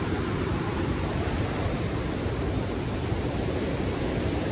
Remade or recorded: remade